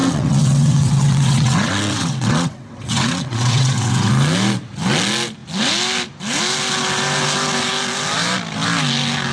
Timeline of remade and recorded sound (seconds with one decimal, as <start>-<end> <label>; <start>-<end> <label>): 0.0-4.1 remade; 4.1-9.3 recorded